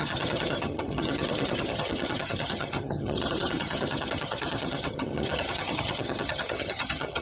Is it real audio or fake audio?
fake